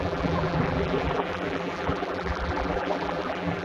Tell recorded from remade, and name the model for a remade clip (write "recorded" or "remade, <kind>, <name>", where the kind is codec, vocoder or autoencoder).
remade, vocoder, BigVGAN v2